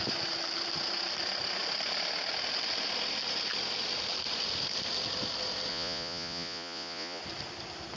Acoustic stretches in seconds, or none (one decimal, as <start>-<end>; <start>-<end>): 0.0-5.7; 7.2-8.0